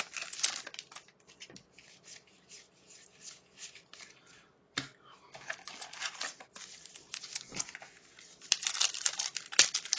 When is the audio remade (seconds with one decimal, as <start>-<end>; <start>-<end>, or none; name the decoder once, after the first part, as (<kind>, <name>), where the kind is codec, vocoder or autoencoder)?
6.0-6.5 (vocoder, BigVGAN v2)